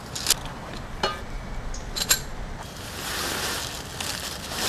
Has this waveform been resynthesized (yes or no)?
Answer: no